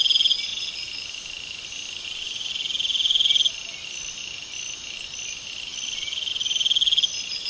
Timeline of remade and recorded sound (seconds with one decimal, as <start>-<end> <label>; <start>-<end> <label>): 0.0-7.5 recorded